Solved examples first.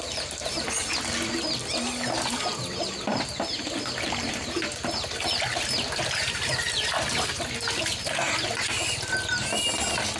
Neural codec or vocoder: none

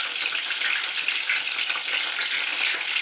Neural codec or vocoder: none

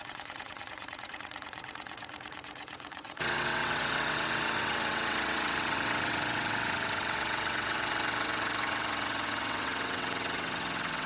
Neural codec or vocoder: vocoder, WaveNeXt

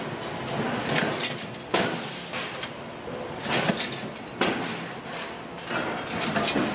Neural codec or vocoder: none